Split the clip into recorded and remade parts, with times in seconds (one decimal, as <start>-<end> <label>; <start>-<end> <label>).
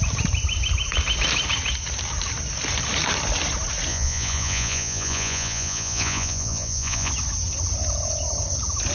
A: 0.0-3.9 recorded; 3.9-7.1 remade; 7.1-8.9 recorded